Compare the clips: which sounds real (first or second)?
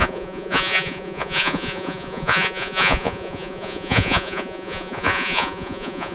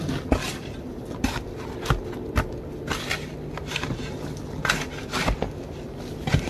second